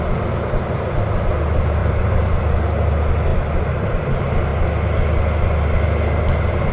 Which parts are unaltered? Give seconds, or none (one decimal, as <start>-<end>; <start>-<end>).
0.0-1.8; 2.4-6.7